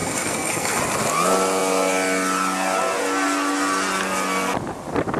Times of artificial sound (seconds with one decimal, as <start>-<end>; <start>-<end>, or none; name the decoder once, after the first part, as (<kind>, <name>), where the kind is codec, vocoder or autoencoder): 0.0-0.8 (codec, SNAC)